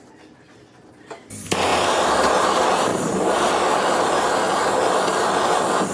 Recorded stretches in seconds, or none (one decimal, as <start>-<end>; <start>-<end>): 0.0-2.9; 3.5-5.9

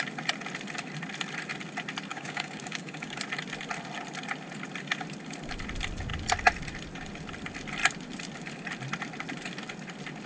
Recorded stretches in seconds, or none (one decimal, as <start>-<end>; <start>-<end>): 0.0-2.1; 3.2-10.3

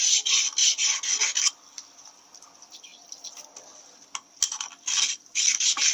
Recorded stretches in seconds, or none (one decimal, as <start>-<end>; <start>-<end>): 0.6-1.2; 2.9-5.2

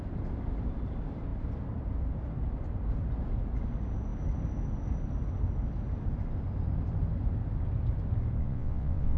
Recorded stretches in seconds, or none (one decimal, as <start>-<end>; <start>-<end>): 0.0-8.4

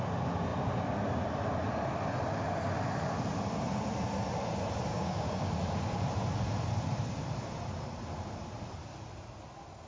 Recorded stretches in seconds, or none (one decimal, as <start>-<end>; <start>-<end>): 0.0-4.9; 5.6-9.9

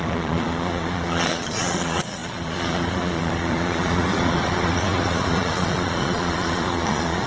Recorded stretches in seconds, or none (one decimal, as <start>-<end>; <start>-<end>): none

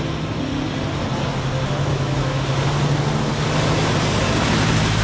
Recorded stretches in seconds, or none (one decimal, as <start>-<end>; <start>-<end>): 0.0-1.9; 2.4-5.0

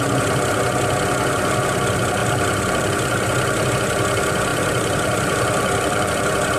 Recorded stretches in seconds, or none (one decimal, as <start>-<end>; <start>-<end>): 0.0-2.2; 3.7-4.5; 6.1-6.6